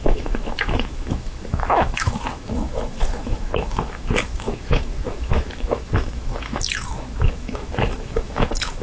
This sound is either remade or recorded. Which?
remade